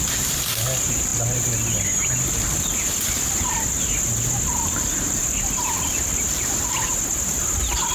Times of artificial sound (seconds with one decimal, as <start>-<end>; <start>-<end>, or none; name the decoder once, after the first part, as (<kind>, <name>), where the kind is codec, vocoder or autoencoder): none